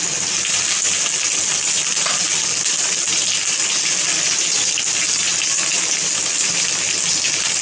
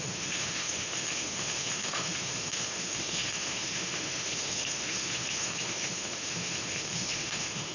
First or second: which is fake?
second